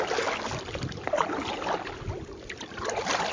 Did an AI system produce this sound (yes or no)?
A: no